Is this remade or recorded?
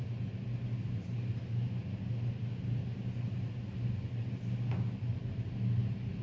recorded